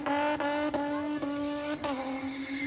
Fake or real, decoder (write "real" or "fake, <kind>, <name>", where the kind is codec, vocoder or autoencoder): real